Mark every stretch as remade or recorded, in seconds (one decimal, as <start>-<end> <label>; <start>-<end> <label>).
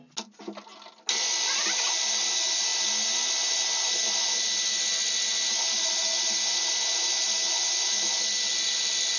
0.0-9.2 recorded